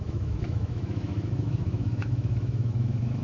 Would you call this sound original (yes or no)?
no